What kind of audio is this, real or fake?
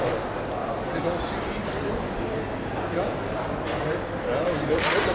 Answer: real